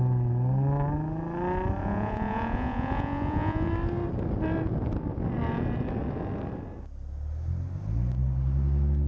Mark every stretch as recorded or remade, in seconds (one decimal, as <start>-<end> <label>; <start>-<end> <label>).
0.0-1.8 recorded; 1.8-3.7 remade; 3.7-9.1 recorded